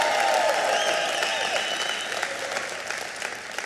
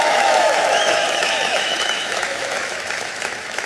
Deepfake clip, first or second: second